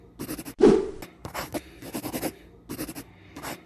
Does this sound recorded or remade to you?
recorded